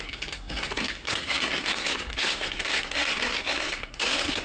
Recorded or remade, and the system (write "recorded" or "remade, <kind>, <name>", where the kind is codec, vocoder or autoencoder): remade, codec, SNAC